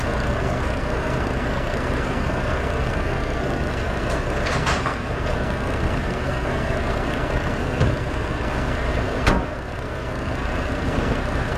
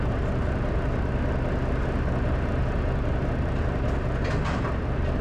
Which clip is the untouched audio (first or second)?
second